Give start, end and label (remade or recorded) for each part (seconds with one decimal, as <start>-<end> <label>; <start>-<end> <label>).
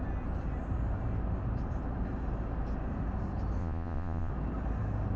0.0-3.6 recorded; 3.6-4.3 remade; 4.3-5.2 recorded